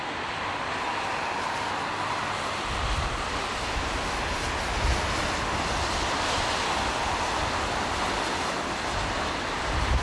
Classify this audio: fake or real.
real